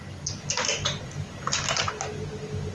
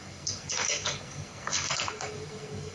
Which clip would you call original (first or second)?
first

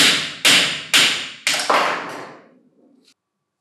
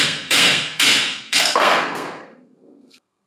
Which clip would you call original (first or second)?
first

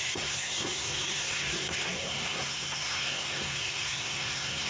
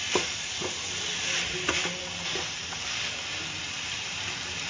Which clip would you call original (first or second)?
second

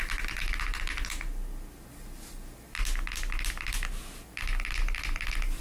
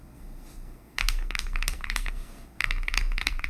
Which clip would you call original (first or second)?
first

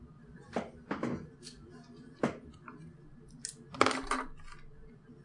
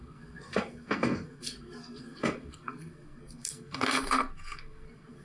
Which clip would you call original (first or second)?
first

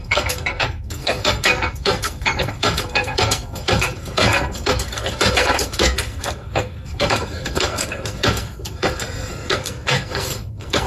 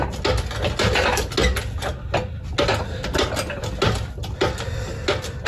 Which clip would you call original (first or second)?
second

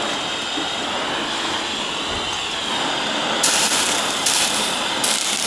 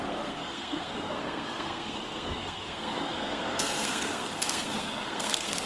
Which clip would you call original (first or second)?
first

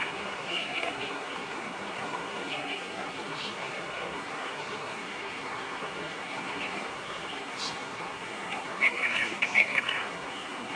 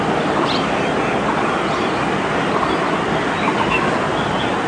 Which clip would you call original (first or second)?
second